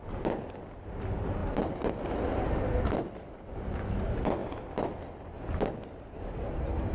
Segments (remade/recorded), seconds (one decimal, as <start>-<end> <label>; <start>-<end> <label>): 0.0-6.9 recorded